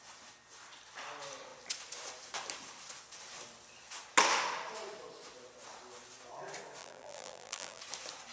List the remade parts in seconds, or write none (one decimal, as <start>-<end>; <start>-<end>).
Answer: 6.8-7.8